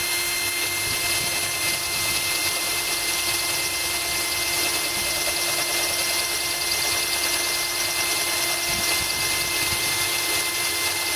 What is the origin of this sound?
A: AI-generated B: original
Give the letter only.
B